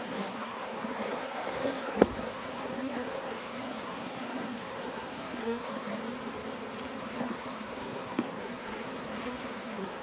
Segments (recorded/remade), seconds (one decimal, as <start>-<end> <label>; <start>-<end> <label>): 0.0-6.0 remade; 6.0-7.0 recorded; 7.0-10.0 remade